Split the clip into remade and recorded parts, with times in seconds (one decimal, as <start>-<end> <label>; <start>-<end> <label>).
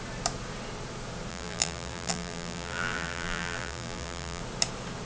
0.0-1.3 recorded; 1.3-4.4 remade; 4.4-5.1 recorded